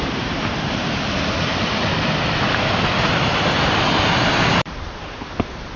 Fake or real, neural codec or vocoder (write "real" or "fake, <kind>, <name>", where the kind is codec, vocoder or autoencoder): fake, vocoder, BigVGAN v2